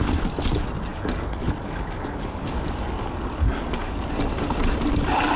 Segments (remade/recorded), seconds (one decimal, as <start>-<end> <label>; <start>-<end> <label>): 0.0-0.9 recorded; 0.9-4.1 remade; 4.1-5.4 recorded

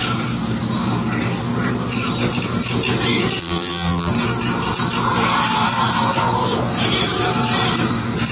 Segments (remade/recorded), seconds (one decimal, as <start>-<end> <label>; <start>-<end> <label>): 0.0-3.4 recorded; 3.4-4.1 remade; 4.1-8.3 recorded

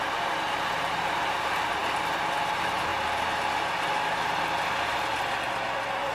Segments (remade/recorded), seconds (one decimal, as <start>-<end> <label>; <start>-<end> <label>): 0.0-1.8 remade; 1.8-2.5 recorded; 2.5-2.9 remade; 2.9-6.1 recorded

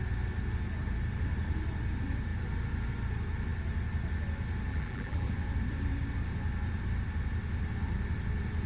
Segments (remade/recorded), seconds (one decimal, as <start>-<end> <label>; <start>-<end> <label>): 0.0-4.7 recorded; 4.7-5.3 remade; 5.3-8.7 recorded

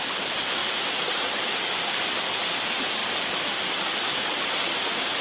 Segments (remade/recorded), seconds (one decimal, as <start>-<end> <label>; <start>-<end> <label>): 0.0-5.2 recorded